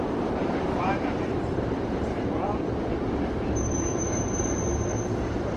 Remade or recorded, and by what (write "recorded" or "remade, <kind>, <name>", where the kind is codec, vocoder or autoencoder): remade, vocoder, BigVGAN v2